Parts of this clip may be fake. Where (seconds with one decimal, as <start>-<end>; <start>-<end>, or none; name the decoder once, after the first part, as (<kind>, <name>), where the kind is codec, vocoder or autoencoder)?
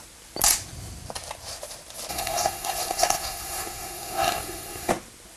2.1-4.9 (codec, SNAC)